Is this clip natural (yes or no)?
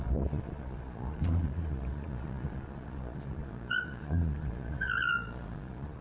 no